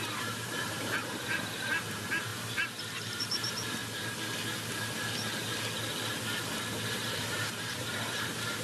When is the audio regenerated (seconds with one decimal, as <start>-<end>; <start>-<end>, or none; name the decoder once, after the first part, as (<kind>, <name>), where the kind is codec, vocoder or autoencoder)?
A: 0.0-3.8 (vocoder, BigVGAN v2); 7.2-8.6